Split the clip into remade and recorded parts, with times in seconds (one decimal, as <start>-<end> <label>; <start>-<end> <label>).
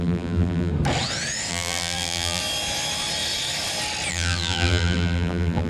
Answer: 0.0-0.7 remade; 0.7-1.5 recorded; 1.5-2.4 remade; 2.4-4.1 recorded; 4.1-5.7 remade